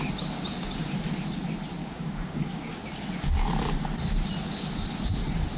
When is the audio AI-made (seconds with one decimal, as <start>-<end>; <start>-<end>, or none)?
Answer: 1.8-2.8